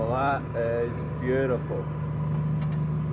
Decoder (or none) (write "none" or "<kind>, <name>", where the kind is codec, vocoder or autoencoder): none